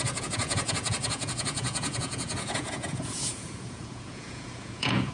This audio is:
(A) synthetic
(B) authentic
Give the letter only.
A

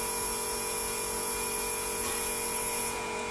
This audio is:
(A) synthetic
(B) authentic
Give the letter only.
A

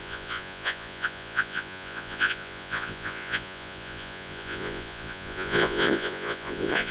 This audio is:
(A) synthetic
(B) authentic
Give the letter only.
A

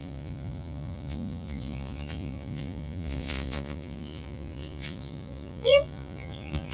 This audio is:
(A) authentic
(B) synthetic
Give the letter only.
B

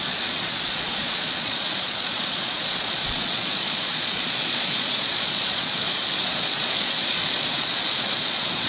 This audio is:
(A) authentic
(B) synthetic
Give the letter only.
B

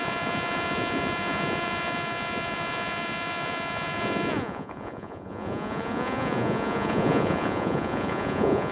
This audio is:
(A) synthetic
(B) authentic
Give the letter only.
A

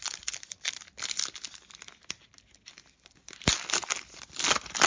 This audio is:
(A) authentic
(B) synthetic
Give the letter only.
A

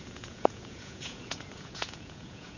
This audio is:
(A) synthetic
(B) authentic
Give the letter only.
A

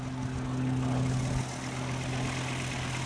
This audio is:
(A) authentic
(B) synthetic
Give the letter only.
A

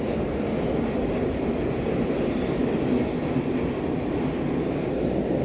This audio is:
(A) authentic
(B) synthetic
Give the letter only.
A